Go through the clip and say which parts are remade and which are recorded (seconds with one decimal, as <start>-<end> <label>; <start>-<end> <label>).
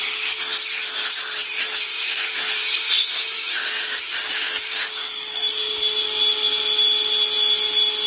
0.0-1.9 recorded; 1.9-2.4 remade; 2.4-3.1 recorded; 3.1-5.4 remade; 5.4-8.1 recorded